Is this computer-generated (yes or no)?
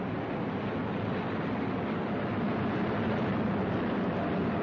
no